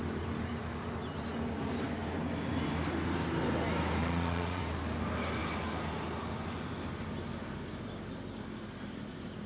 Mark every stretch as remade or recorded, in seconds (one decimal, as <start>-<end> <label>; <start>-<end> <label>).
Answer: 0.0-4.0 recorded; 4.0-4.6 remade; 4.6-9.5 recorded